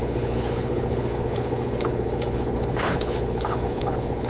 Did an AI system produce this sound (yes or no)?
yes